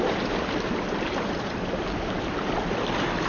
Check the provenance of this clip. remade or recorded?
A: recorded